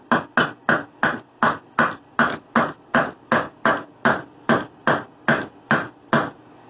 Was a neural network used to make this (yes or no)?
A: no